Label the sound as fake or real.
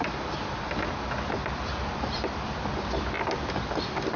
real